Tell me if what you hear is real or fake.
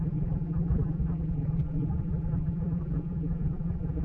fake